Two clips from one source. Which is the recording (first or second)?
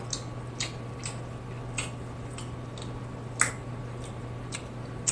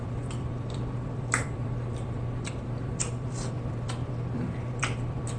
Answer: first